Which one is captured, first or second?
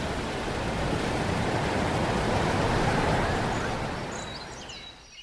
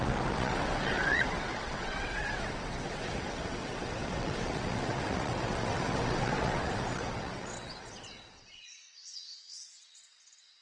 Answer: first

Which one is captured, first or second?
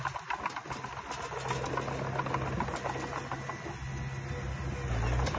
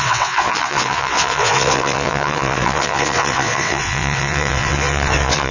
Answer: first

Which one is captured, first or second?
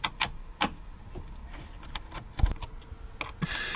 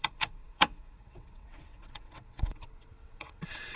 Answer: first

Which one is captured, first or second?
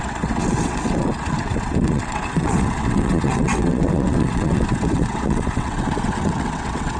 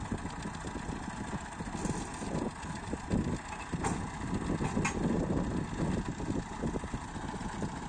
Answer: second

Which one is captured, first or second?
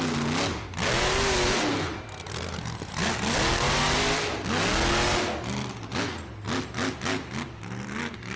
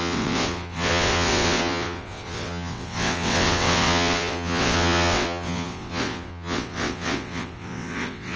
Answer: first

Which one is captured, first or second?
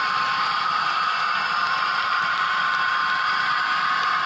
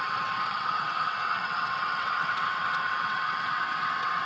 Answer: first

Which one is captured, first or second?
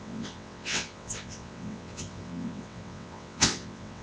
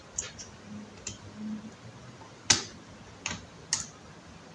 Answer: second